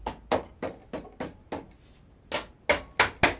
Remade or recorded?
recorded